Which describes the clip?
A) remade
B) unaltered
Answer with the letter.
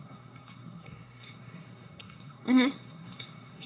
A